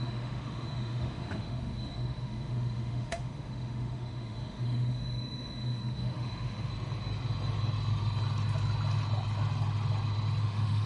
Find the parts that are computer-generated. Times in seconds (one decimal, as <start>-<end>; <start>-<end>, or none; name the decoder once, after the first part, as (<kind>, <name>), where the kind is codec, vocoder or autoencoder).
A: 0.0-6.7 (autoencoder, DAC-VAE); 10.4-10.9